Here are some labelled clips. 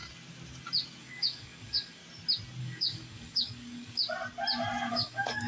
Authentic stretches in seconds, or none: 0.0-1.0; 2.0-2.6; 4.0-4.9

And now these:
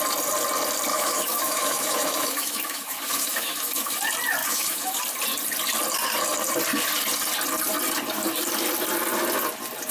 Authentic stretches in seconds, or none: 0.0-0.9; 4.0-4.4; 5.0-9.9

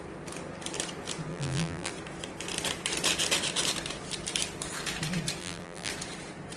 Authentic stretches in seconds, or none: 0.0-1.3; 1.9-5.4; 5.9-6.6